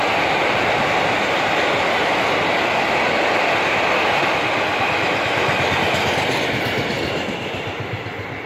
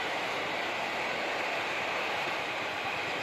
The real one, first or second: first